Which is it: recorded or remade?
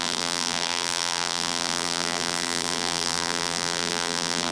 remade